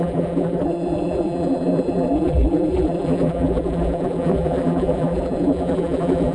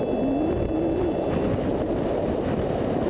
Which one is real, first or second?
second